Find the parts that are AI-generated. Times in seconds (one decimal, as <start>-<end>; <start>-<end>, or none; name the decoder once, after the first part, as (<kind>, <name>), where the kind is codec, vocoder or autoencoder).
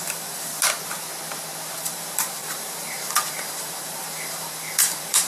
0.0-0.5 (vocoder, BigVGAN v2); 1.8-5.3